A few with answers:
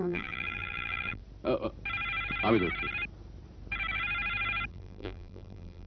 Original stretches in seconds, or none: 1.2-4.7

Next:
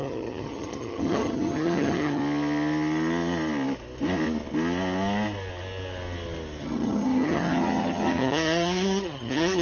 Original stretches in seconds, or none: 2.2-6.6